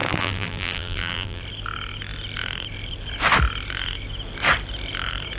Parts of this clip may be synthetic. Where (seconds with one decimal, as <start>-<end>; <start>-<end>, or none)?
0.0-1.4